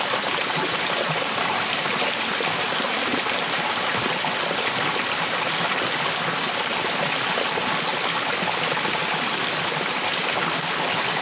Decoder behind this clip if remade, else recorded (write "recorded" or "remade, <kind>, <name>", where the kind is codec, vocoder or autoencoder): recorded